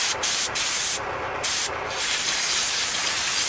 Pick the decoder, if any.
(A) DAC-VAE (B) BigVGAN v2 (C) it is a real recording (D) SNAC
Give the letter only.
B